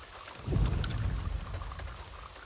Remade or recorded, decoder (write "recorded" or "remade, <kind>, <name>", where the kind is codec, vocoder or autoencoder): recorded